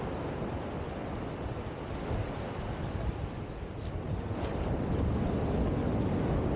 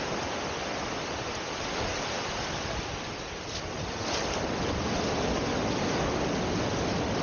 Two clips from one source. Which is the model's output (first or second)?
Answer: second